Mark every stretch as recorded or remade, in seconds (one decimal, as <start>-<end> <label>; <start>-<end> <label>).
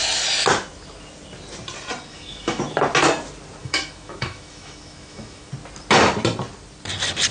0.0-2.1 recorded; 2.1-2.6 remade; 2.6-3.6 recorded; 3.6-5.5 remade; 5.5-7.3 recorded